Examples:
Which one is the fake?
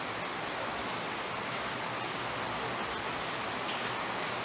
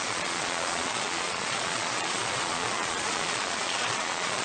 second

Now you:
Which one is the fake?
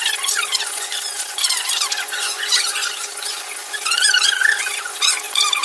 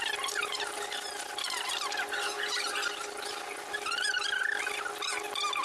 first